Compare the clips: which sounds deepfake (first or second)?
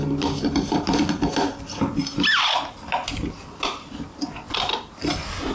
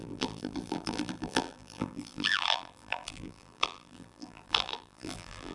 second